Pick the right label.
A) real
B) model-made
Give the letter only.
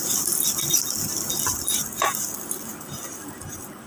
A